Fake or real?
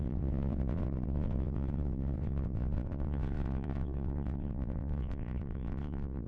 fake